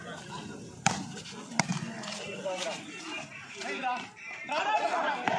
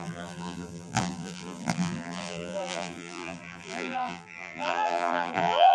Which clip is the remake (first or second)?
second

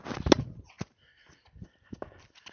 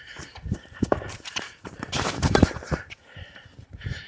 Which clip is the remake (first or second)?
second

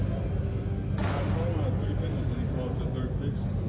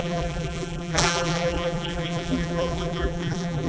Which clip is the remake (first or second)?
second